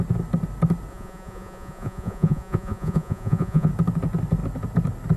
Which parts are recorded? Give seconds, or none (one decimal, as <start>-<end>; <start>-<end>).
0.0-0.9; 3.7-5.2